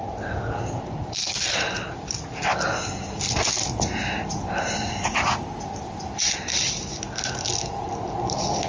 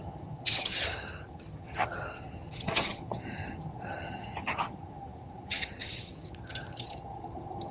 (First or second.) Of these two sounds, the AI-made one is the second